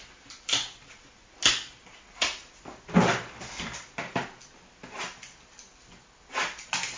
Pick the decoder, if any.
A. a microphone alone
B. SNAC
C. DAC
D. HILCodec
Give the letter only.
A